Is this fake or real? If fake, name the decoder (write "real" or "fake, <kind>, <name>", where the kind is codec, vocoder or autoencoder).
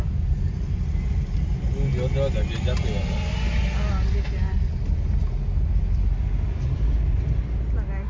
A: real